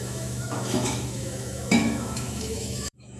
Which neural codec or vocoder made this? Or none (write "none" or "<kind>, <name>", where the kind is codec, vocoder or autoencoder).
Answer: autoencoder, DAC-VAE